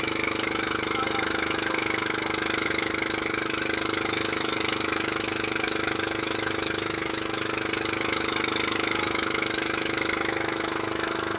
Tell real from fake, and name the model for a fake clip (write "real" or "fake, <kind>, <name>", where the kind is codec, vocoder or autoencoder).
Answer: fake, autoencoder, DAC-VAE